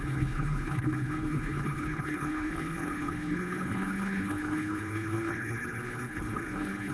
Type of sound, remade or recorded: remade